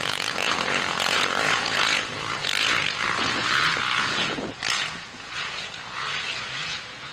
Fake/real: fake